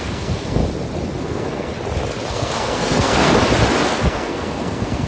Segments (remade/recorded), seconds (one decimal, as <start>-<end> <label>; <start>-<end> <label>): 0.0-0.6 remade; 0.6-1.2 recorded; 1.2-1.7 remade; 1.7-2.3 recorded; 2.3-3.3 remade; 3.3-3.9 recorded; 3.9-5.1 remade